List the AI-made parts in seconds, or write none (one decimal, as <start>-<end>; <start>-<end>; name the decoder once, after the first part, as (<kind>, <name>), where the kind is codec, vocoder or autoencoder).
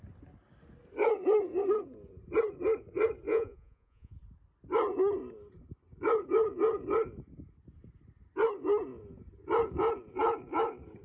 3.3-4.2 (vocoder, Vocos)